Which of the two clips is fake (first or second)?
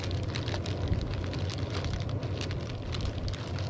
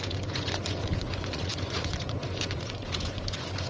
second